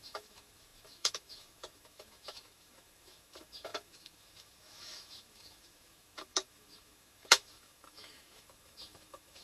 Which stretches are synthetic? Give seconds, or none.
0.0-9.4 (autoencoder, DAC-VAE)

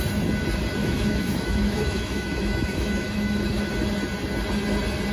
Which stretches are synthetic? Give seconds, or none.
0.8-3.7 (autoencoder, DAC-VAE)

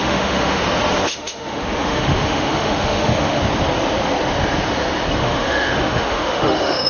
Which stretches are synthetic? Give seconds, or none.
0.0-0.6 (autoencoder, DAC-VAE); 1.0-3.4; 5.2-6.9

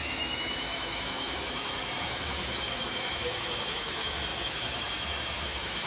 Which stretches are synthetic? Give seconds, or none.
0.0-5.9 (autoencoder, DAC-VAE)

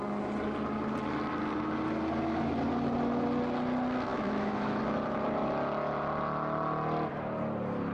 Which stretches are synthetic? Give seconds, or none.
4.1-4.8 (autoencoder, DAC-VAE)

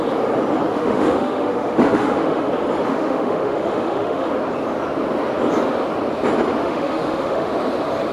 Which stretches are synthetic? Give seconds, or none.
0.7-2.5 (autoencoder, DAC-VAE); 2.9-4.3; 6.6-7.5